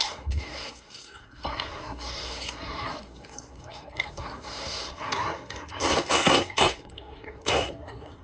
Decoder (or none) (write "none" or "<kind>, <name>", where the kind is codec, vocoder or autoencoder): codec, SNAC